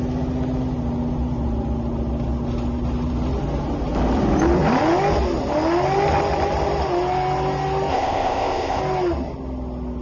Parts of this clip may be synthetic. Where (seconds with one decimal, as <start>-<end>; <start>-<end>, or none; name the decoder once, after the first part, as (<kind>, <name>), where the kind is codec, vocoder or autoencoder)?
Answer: 7.9-8.8 (codec, ZipCodec)